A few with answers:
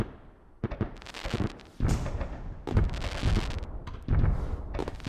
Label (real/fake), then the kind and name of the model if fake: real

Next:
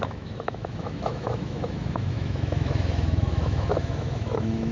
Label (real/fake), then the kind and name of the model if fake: fake, autoencoder, DAC-VAE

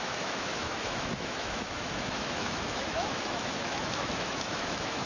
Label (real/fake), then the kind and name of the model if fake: fake, autoencoder, DAC-VAE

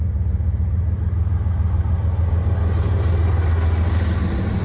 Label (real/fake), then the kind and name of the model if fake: real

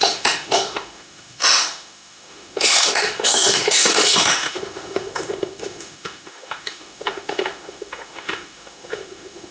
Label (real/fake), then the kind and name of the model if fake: fake, autoencoder, DAC-VAE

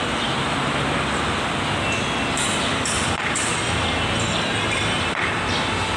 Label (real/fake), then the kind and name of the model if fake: real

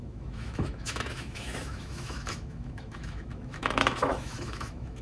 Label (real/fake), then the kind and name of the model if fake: fake, autoencoder, DAC-VAE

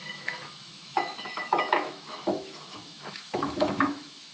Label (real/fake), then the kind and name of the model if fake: fake, autoencoder, DAC-VAE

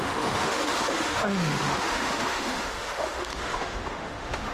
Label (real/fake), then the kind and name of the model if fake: fake, autoencoder, DAC-VAE